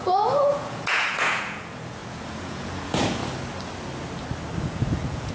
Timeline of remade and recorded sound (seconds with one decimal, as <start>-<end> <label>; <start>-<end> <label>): 0.0-3.2 remade; 3.2-4.6 recorded; 4.6-5.3 remade